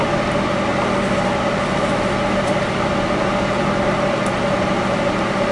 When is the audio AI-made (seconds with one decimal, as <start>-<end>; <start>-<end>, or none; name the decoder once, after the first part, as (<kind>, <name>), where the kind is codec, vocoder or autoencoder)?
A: none